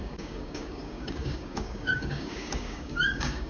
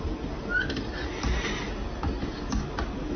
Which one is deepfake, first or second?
first